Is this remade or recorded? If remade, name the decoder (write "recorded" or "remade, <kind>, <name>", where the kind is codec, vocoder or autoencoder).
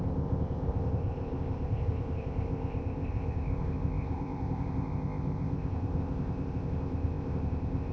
remade, codec, ZipCodec